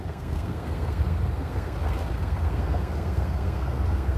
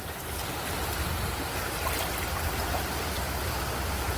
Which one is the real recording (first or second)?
second